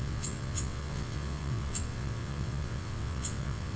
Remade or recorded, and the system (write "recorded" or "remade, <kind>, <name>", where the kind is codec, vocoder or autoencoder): remade, vocoder, WaveNeXt